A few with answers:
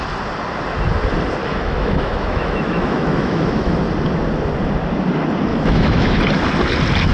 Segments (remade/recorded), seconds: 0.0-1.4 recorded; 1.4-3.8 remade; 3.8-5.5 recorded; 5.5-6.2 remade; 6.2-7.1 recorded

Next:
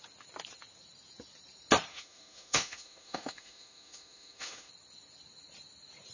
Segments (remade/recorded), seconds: 0.0-1.9 recorded; 1.9-4.7 remade; 4.7-6.1 recorded